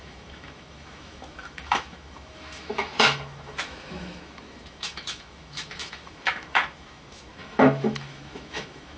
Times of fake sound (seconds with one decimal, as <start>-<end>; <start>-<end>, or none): 0.0-9.0